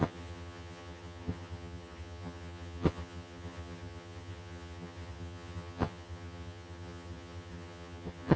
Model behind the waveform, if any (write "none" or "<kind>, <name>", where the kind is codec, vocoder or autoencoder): vocoder, HiFi-GAN